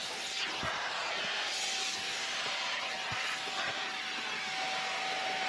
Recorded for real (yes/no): yes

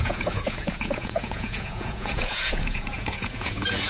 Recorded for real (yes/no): no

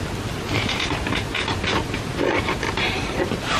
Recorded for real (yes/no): yes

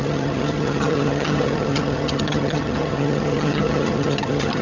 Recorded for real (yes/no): no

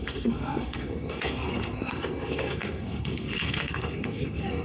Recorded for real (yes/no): no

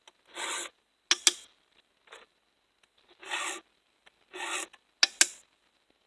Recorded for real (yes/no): yes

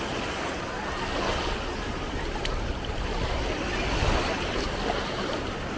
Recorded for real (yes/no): yes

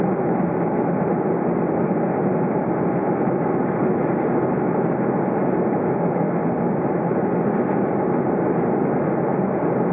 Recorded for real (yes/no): yes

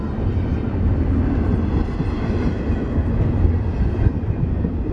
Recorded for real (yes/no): yes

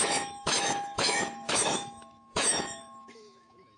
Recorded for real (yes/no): no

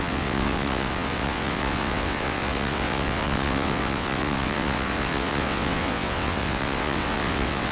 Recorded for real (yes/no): no